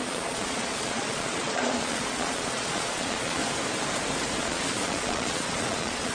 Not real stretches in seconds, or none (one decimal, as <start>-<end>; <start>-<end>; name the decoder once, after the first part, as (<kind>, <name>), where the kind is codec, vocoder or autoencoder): 0.0-3.4 (vocoder, Vocos); 4.4-6.1